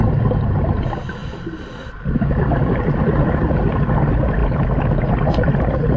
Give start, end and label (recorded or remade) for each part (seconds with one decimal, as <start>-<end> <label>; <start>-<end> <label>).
0.0-6.0 recorded

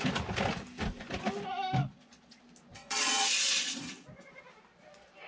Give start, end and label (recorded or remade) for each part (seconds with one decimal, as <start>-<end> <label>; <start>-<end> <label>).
0.0-1.8 recorded; 1.8-2.4 remade; 2.4-2.8 recorded; 2.8-3.9 remade; 3.9-5.3 recorded

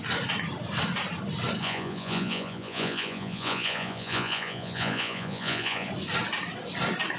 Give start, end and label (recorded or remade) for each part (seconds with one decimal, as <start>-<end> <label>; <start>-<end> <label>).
0.0-1.6 recorded; 1.6-5.9 remade; 5.9-7.2 recorded

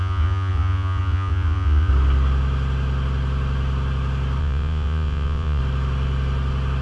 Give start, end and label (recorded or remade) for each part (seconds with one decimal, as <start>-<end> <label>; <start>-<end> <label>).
0.0-1.9 remade; 1.9-4.4 recorded; 4.4-5.6 remade; 5.6-6.8 recorded

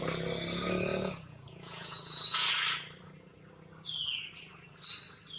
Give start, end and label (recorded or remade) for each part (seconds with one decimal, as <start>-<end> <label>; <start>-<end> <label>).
0.0-0.9 recorded; 0.9-2.5 remade; 2.5-5.4 recorded

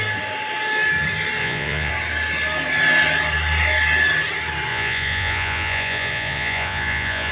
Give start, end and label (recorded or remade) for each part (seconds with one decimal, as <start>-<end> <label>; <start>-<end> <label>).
0.0-1.4 recorded; 1.4-1.9 remade; 1.9-4.7 recorded; 4.7-7.3 remade